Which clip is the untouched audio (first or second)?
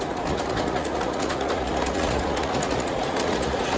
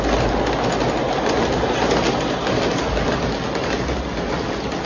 second